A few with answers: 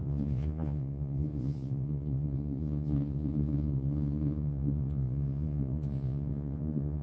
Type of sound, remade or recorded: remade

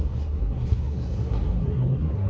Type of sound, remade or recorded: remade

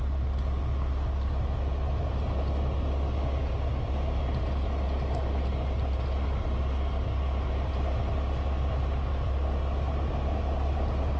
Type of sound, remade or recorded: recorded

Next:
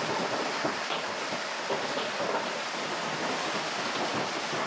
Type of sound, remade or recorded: recorded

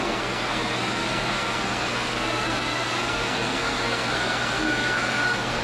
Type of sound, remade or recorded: remade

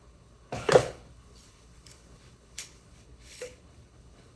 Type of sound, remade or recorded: remade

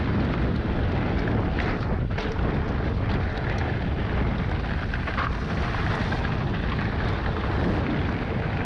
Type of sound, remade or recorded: recorded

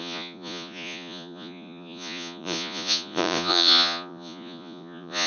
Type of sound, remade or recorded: remade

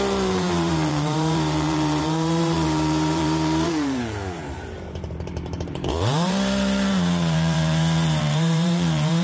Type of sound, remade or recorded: remade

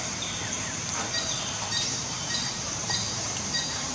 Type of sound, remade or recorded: remade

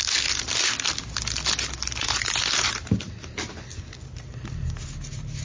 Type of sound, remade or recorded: recorded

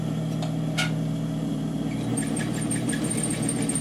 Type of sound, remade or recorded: remade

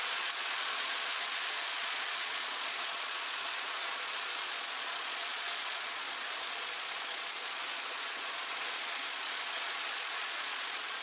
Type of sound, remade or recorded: remade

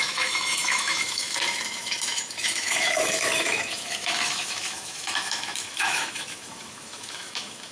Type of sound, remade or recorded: remade